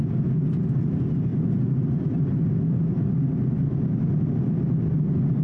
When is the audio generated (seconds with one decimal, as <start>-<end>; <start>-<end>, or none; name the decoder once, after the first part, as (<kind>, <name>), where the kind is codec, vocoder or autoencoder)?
none